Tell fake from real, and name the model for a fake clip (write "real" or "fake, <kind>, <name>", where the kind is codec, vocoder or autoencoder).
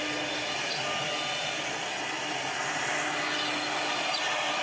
real